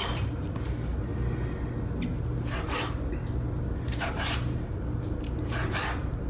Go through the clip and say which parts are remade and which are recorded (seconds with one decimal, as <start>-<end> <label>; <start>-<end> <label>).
0.0-1.1 remade; 1.1-4.1 recorded; 4.1-6.3 remade